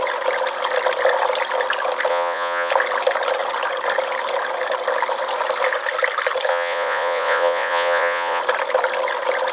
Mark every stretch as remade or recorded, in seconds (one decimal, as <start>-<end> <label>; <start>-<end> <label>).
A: 0.0-2.1 recorded; 2.1-2.7 remade; 2.7-6.5 recorded; 6.5-8.4 remade; 8.4-9.5 recorded